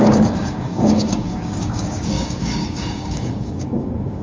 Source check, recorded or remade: remade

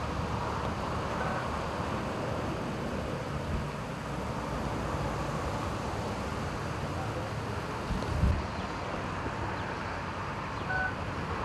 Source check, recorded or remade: recorded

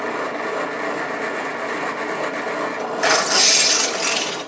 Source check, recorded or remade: recorded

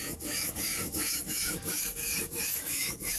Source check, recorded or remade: remade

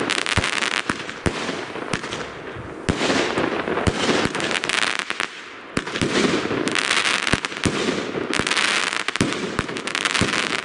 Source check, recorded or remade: recorded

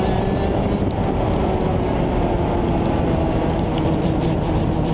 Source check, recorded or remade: recorded